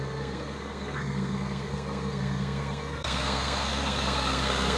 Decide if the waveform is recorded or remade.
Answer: remade